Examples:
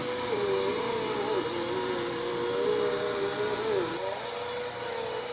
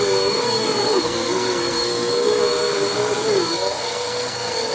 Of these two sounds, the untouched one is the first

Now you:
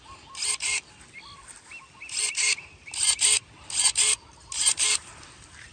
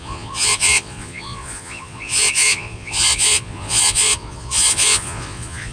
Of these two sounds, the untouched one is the first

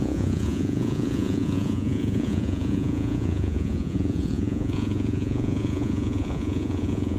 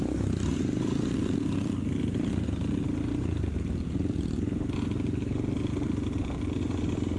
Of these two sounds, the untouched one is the second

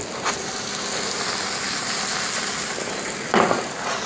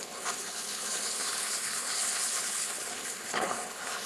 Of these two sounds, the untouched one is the first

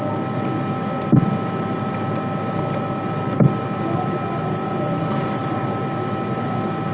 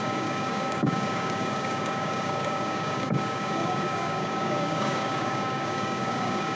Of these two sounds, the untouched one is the first